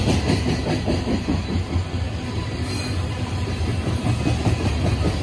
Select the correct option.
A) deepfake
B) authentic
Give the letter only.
B